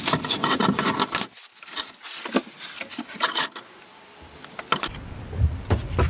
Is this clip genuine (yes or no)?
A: yes